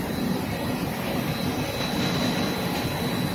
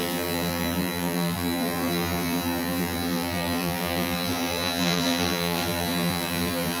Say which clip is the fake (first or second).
second